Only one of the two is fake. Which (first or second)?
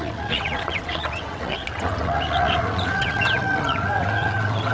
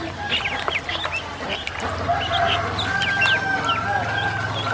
first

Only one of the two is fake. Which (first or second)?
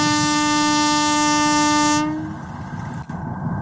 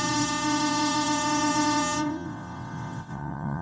second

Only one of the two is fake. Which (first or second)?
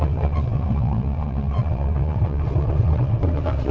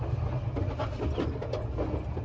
first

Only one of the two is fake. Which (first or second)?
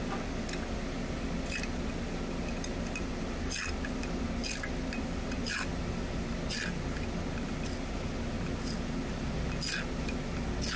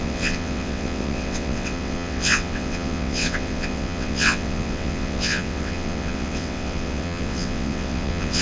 second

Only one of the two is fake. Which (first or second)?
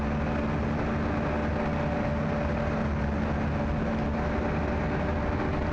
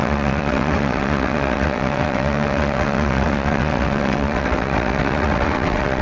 second